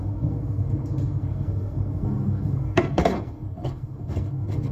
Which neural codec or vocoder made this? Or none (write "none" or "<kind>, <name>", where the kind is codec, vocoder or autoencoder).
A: codec, SNAC